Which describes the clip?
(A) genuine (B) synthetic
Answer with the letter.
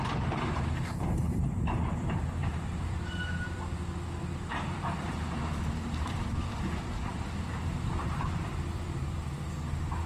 B